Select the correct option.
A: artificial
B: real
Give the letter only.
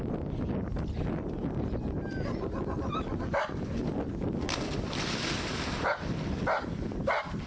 B